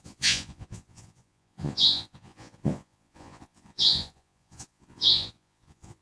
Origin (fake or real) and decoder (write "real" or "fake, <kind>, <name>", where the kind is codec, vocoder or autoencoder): fake, vocoder, Vocos